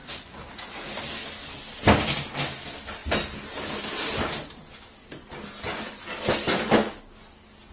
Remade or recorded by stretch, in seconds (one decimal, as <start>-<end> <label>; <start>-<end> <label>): 0.0-1.0 remade; 1.0-7.7 recorded